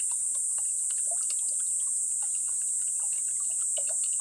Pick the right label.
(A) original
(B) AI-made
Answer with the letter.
A